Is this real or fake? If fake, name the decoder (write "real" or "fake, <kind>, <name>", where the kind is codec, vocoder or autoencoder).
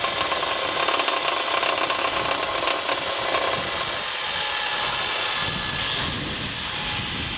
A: real